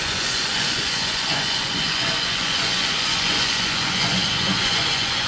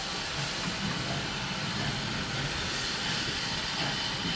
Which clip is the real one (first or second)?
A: second